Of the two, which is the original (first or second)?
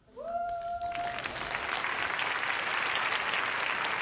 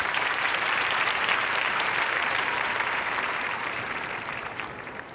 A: first